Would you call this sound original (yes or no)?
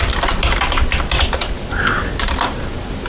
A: yes